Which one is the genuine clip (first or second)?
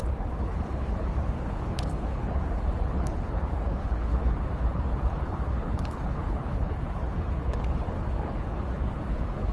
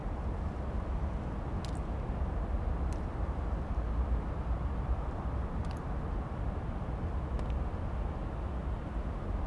second